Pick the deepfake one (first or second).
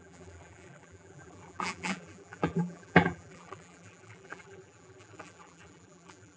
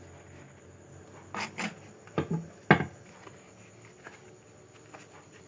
first